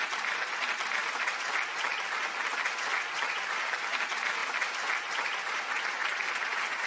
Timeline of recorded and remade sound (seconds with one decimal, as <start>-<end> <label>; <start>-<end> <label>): 0.0-6.9 recorded

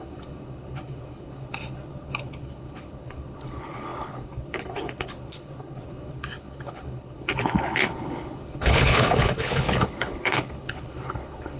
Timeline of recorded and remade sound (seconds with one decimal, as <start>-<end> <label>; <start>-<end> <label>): 0.0-11.6 remade

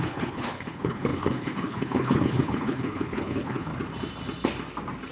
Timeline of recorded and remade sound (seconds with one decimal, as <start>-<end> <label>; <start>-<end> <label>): 0.0-3.7 remade; 3.7-5.1 recorded

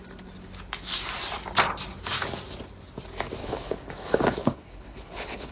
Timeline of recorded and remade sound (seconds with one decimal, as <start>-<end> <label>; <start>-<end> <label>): 0.0-3.4 recorded; 3.4-5.5 remade

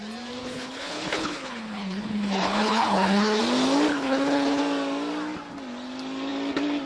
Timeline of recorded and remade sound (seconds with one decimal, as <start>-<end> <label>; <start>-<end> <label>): 0.0-0.4 recorded; 0.4-3.4 remade; 3.4-3.9 recorded; 3.9-4.6 remade; 4.6-6.9 recorded

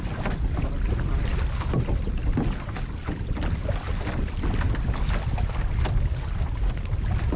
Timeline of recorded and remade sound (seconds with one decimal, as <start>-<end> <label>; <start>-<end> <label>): 0.0-7.4 recorded